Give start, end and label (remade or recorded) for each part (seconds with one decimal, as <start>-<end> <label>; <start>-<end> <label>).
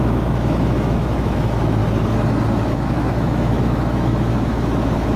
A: 0.0-1.8 remade; 1.8-2.7 recorded; 2.7-5.2 remade